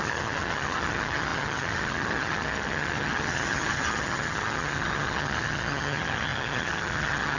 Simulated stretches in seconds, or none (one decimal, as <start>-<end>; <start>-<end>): 0.0-7.4